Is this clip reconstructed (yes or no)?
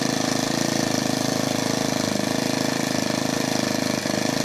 no